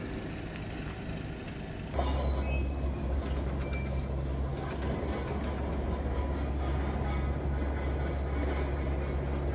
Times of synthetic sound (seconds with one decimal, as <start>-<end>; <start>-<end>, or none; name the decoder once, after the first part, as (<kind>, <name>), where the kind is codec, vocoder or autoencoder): none